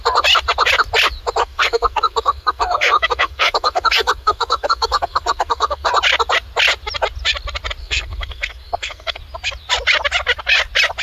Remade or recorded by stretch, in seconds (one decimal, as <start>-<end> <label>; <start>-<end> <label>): 0.0-1.4 recorded; 1.4-5.9 remade; 5.9-7.8 recorded; 7.8-9.2 remade; 9.2-11.0 recorded

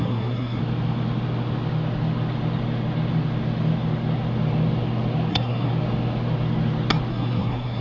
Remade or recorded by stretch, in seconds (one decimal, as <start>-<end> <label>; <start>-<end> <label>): 0.0-0.6 remade; 0.6-5.3 recorded; 5.3-5.7 remade; 5.7-7.1 recorded; 7.1-7.8 remade

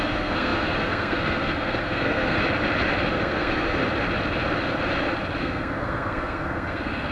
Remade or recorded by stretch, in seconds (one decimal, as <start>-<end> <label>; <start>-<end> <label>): 0.0-2.4 remade; 2.4-3.1 recorded; 3.1-3.8 remade; 3.8-5.4 recorded; 5.4-7.1 remade